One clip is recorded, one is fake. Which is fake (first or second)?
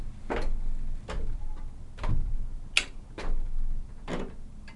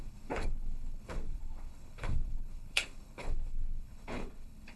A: second